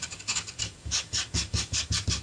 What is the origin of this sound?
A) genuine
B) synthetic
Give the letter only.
B